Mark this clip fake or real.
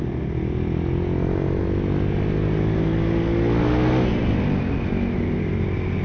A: real